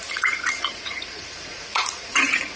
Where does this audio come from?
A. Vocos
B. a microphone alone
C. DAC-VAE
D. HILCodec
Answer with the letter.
A